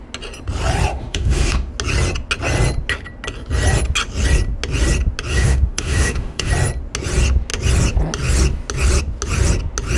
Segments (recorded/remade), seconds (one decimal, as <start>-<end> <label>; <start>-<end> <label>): 0.0-0.9 recorded; 0.9-1.7 remade; 1.7-5.3 recorded; 5.3-6.5 remade; 6.5-10.0 recorded